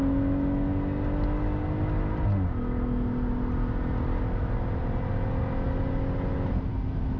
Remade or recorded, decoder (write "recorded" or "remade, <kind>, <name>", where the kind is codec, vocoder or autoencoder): recorded